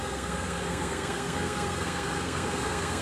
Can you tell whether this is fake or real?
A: fake